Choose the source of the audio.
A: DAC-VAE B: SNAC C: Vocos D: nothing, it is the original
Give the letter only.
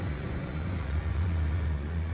C